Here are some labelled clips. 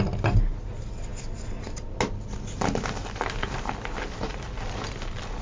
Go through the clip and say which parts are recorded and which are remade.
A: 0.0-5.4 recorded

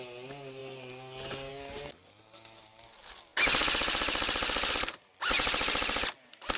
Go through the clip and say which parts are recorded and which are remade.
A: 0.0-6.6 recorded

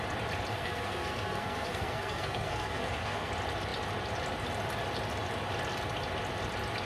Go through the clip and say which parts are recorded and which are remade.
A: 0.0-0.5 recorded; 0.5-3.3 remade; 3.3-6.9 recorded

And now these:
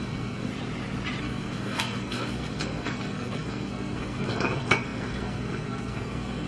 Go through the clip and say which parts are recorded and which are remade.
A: 0.0-0.5 remade; 0.5-1.2 recorded; 1.2-6.5 remade

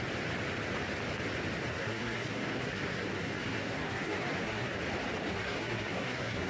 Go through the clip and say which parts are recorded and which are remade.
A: 0.0-1.7 recorded; 1.7-4.8 remade; 4.8-5.3 recorded; 5.3-6.5 remade